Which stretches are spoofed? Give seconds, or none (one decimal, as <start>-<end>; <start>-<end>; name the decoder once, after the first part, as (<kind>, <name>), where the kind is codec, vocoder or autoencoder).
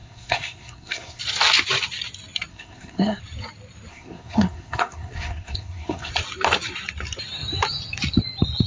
0.0-1.2 (codec, SNAC); 2.5-3.2; 3.9-6.1